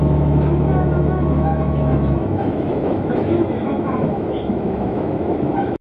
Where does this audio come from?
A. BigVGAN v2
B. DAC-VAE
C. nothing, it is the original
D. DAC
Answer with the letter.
B